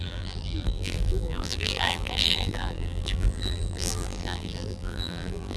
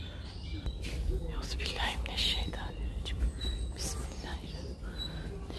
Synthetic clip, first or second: first